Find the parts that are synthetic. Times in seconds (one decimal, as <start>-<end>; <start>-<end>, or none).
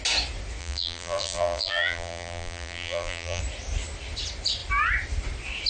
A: 0.6-3.4